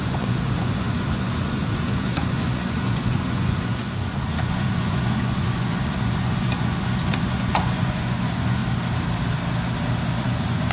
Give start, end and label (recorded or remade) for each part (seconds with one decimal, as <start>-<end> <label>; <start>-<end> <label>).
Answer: 0.0-8.6 remade; 8.6-10.2 recorded; 10.2-10.7 remade

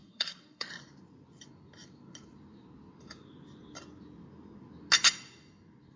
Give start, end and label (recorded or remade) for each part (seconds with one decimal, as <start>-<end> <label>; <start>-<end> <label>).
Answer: 0.0-0.7 remade; 0.7-6.0 recorded

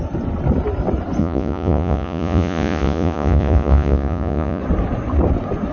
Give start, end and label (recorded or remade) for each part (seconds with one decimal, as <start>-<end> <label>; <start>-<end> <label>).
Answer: 0.0-1.2 recorded; 1.2-4.6 remade; 4.6-5.7 recorded

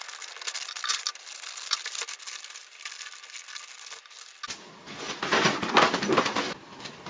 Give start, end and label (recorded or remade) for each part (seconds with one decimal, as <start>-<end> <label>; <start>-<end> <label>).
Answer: 0.0-7.1 recorded

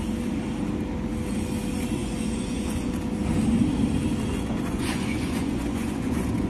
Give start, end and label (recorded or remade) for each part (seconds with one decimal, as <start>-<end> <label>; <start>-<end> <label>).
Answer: 0.0-2.0 recorded; 2.0-2.9 remade; 2.9-4.3 recorded; 4.3-6.5 remade

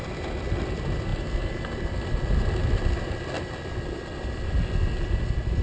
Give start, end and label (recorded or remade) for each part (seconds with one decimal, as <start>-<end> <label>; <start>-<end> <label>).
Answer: 0.0-5.6 recorded